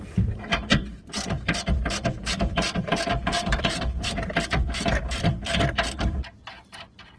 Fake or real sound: fake